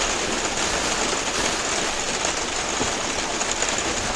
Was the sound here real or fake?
real